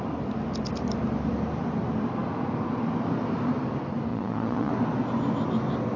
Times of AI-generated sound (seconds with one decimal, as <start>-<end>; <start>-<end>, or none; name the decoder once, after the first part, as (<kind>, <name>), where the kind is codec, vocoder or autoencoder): 4.1-4.7 (vocoder, Vocos)